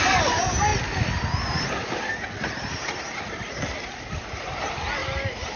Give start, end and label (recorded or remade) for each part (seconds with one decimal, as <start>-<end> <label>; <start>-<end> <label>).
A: 0.0-5.6 recorded